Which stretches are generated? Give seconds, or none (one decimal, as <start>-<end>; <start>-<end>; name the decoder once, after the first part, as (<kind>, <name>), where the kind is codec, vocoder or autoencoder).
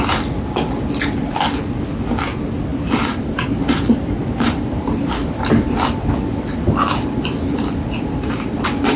2.7-5.1 (vocoder, BigVGAN v2)